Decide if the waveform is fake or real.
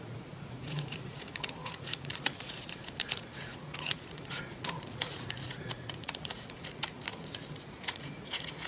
fake